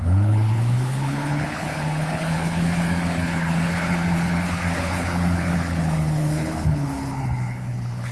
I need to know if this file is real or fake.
fake